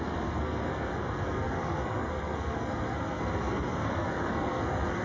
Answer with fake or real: fake